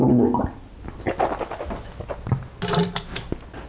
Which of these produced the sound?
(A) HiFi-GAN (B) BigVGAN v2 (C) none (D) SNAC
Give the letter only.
C